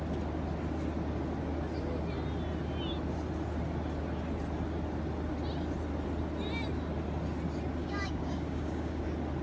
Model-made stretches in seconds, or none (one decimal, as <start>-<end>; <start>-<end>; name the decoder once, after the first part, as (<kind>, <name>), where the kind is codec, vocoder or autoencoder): 7.8-9.0 (codec, DAC)